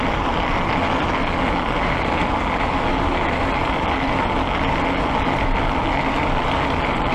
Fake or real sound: real